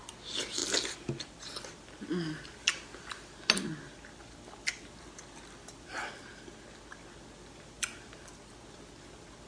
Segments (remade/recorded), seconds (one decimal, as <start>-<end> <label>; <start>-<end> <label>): 0.0-9.5 recorded